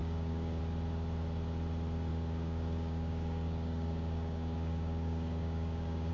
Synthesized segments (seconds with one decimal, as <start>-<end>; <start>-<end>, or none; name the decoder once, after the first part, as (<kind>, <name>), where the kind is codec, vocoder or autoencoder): 0.0-0.6 (codec, DAC); 2.1-6.1